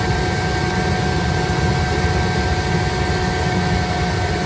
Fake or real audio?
real